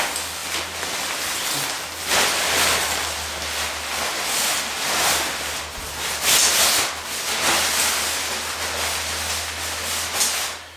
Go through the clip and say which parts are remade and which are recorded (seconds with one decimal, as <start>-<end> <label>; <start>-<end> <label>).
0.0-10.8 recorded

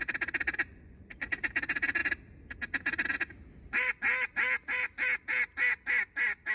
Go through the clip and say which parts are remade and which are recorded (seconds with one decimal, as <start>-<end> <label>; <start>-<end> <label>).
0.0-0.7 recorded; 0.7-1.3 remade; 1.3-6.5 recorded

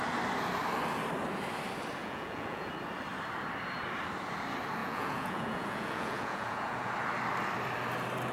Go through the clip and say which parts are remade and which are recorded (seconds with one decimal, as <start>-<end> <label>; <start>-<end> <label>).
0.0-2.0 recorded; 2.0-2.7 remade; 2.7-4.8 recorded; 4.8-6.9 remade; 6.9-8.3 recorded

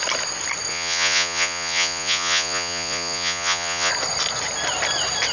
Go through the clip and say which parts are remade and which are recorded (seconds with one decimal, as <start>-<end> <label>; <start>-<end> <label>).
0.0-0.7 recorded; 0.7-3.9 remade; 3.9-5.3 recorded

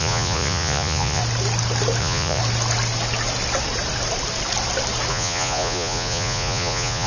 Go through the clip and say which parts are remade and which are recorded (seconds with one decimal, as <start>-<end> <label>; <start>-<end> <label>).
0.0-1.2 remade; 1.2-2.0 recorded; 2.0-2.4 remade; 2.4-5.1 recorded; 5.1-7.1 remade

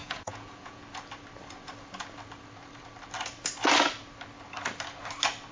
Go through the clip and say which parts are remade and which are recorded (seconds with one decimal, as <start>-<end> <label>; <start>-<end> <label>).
0.0-0.8 remade; 0.8-5.5 recorded

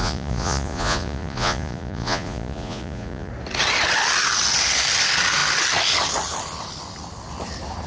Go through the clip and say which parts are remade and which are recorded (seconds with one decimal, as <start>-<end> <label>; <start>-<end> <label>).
0.0-3.3 remade; 3.3-7.9 recorded

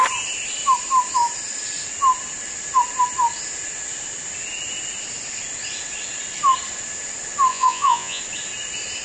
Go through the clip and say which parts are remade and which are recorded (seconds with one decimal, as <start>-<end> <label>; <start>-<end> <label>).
0.0-7.5 recorded; 7.5-8.2 remade; 8.2-9.0 recorded